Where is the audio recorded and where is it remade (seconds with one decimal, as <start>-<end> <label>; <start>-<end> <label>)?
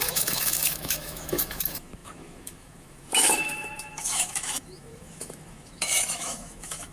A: 0.0-6.9 remade